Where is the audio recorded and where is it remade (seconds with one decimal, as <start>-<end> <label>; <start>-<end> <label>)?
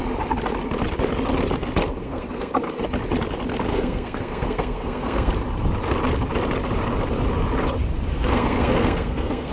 0.0-2.0 recorded; 2.0-2.5 remade; 2.5-3.7 recorded; 3.7-5.3 remade; 5.3-8.1 recorded; 8.1-9.5 remade